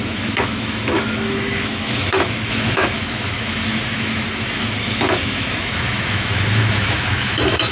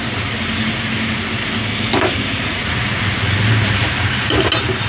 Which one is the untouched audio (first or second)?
second